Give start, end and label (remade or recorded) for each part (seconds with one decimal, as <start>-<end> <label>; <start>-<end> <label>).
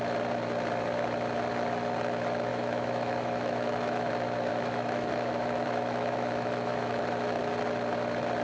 0.0-2.5 recorded; 2.5-4.1 remade; 4.1-4.5 recorded; 4.5-7.0 remade; 7.0-8.4 recorded